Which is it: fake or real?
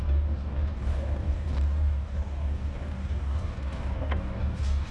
fake